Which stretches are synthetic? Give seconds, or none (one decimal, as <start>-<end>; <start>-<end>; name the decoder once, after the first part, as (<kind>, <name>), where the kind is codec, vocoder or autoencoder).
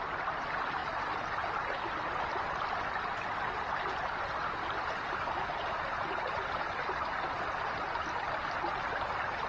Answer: none